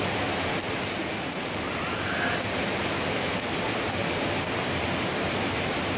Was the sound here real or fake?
real